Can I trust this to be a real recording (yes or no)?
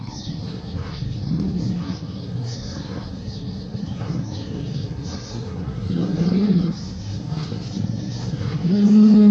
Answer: no